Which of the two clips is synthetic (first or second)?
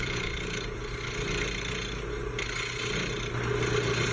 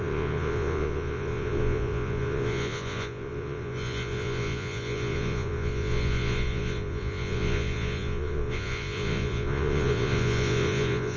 second